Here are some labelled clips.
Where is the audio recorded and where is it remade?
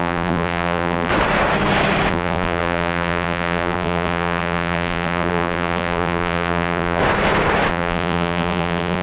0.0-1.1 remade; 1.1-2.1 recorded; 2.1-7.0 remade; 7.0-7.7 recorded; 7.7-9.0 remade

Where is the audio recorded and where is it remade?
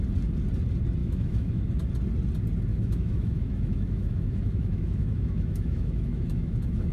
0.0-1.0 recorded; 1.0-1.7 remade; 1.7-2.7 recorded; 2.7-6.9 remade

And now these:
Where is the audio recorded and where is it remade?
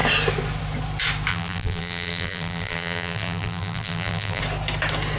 0.0-1.3 recorded; 1.3-4.4 remade; 4.4-5.2 recorded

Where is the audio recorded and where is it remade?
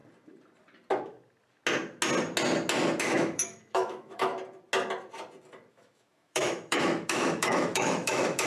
0.0-3.0 recorded; 3.0-4.3 remade; 4.3-5.7 recorded; 5.7-8.5 remade